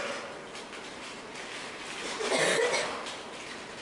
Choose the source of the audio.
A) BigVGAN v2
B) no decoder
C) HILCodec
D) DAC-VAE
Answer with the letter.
B